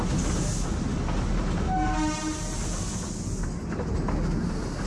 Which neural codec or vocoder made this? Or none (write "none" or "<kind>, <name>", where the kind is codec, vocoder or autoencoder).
none